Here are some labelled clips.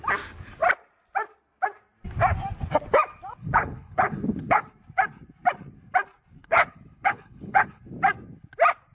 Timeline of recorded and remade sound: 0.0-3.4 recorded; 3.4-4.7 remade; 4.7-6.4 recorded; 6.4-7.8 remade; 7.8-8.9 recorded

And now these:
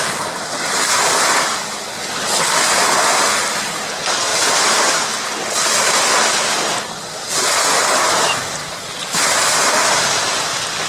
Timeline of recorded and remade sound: 0.0-4.3 recorded; 4.3-5.1 remade; 5.1-10.9 recorded

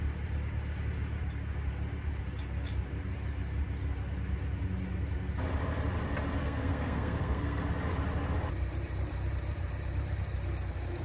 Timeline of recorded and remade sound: 0.0-6.4 recorded; 6.4-7.6 remade; 7.6-11.0 recorded

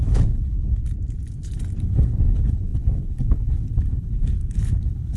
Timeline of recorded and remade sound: 0.0-0.8 remade; 0.8-1.8 recorded; 1.8-5.2 remade

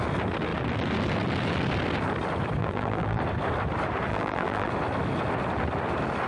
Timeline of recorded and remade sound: 0.0-2.6 recorded; 2.6-3.2 remade; 3.2-4.1 recorded; 4.1-4.7 remade; 4.7-6.3 recorded